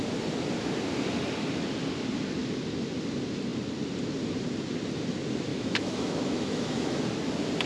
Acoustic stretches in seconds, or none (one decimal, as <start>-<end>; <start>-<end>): 0.0-5.5; 7.0-7.7

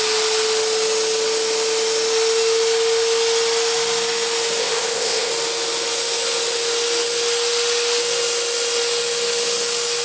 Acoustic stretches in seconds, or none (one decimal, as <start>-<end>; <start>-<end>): 0.0-4.6; 5.3-10.0

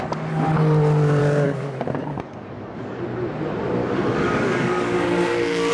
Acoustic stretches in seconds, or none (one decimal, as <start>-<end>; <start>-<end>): 0.0-1.2; 1.7-2.1; 3.0-3.8